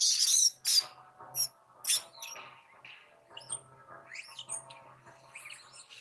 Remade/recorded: recorded